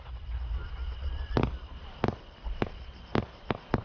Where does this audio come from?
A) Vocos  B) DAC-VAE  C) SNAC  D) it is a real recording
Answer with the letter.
D